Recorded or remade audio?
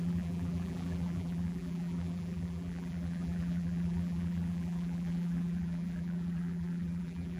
remade